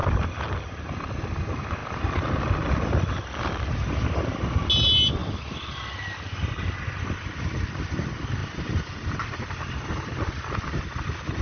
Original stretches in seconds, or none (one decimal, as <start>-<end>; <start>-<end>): 0.0-8.4; 9.1-11.4